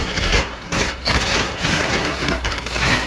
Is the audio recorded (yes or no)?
no